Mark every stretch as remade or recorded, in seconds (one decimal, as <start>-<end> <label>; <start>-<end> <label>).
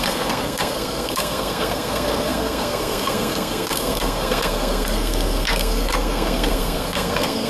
0.0-7.5 remade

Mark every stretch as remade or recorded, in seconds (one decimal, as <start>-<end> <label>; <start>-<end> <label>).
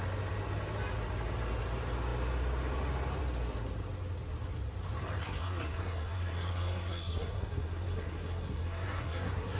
0.0-5.2 recorded; 5.2-9.6 remade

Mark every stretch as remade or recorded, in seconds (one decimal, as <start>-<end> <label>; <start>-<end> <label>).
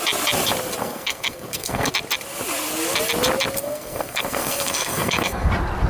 0.0-0.8 recorded; 0.8-1.9 remade; 1.9-3.6 recorded; 3.6-5.5 remade; 5.5-5.9 recorded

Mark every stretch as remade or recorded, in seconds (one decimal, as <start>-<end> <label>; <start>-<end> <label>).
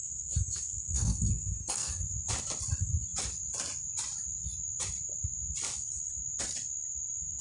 0.0-2.0 remade; 2.0-7.4 recorded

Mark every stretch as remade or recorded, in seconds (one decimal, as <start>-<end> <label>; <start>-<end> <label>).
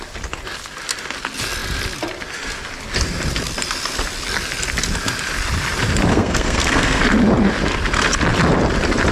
0.0-6.1 recorded; 6.1-7.0 remade; 7.0-9.1 recorded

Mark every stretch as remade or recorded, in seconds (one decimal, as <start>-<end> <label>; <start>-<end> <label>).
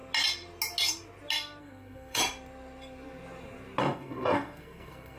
0.0-1.6 recorded; 1.6-2.2 remade; 2.2-3.8 recorded; 3.8-5.2 remade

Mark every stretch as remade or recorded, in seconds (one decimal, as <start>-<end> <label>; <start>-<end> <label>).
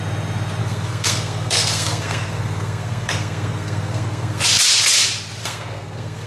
0.0-0.6 recorded; 0.6-4.4 remade; 4.4-5.4 recorded; 5.4-6.3 remade